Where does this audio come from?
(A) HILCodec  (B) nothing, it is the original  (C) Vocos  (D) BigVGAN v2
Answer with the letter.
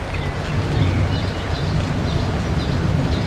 B